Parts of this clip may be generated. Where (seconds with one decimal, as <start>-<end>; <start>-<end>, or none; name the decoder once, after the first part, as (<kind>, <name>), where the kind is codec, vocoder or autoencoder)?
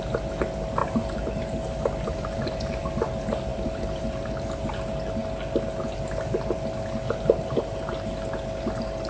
0.8-2.9 (vocoder, BigVGAN v2); 3.5-4.7